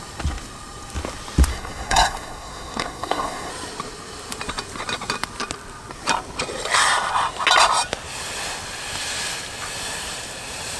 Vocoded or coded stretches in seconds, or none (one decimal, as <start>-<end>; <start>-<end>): 1.5-3.5